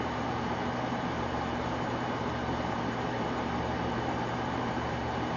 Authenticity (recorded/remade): remade